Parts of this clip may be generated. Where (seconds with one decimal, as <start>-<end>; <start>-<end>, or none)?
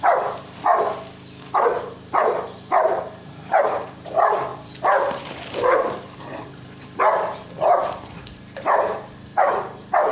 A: 0.0-0.7; 1.7-10.1